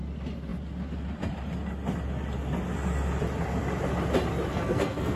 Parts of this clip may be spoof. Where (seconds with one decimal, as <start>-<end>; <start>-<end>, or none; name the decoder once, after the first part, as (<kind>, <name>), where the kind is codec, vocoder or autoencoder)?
4.5-5.2 (codec, SNAC)